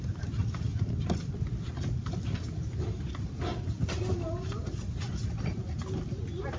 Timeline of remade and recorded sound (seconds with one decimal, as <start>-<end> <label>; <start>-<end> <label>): 0.0-6.6 recorded